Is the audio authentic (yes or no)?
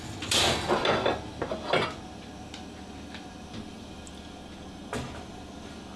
yes